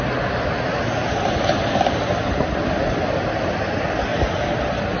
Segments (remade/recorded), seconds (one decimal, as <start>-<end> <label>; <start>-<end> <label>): 0.0-5.0 recorded